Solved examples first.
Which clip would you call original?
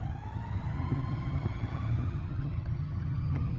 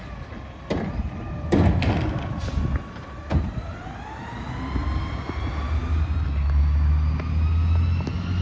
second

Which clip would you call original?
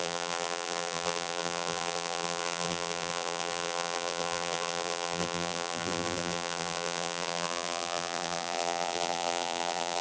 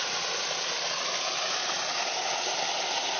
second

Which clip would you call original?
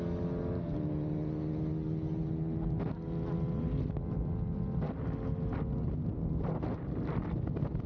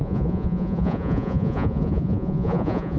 first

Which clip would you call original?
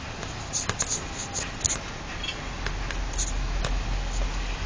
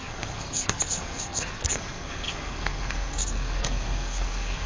first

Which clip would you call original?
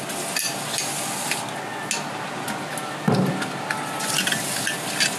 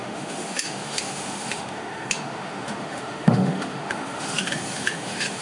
first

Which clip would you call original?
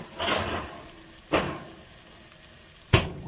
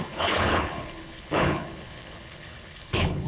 first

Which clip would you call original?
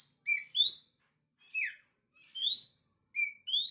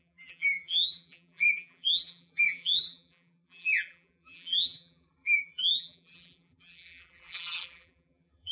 first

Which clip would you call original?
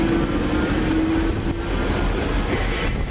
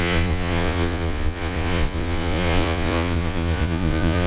first